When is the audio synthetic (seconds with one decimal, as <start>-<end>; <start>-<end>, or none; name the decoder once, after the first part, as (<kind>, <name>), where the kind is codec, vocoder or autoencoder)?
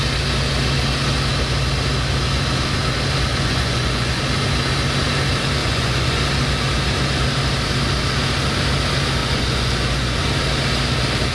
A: 3.3-4.2 (vocoder, Vocos); 5.6-6.2; 9.2-10.2